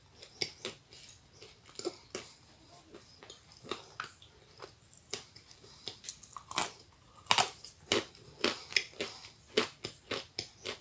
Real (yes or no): yes